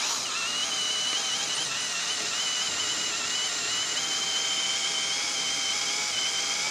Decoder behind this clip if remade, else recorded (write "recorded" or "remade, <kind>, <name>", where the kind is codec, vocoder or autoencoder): recorded